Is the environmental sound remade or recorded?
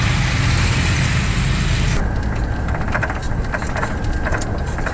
recorded